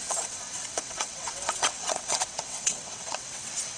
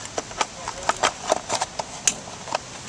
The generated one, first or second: first